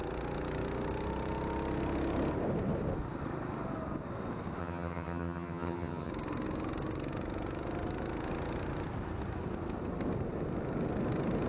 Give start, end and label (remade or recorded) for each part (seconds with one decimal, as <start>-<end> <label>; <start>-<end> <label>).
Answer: 0.0-4.6 recorded; 4.6-6.1 remade; 6.1-11.5 recorded